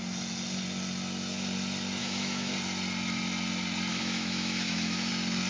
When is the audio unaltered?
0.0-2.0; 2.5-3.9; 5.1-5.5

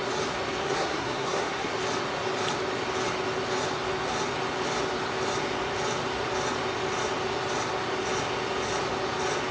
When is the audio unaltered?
0.0-0.6; 1.7-9.5

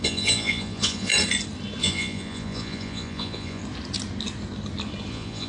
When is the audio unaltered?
1.1-1.8; 3.6-5.1

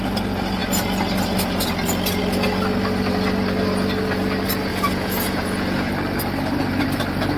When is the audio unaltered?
0.0-4.7; 5.9-7.4

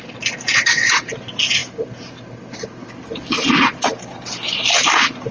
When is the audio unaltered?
0.0-0.5; 1.1-5.3

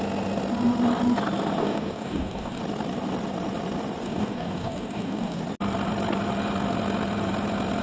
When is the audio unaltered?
0.0-1.6; 2.6-4.0; 5.4-7.8

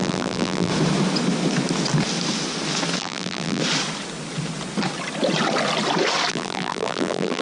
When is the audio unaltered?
0.7-3.0; 3.6-6.3

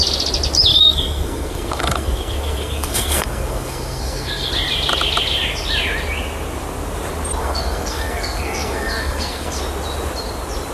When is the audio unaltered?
0.0-0.7; 4.5-7.4; 9.6-10.7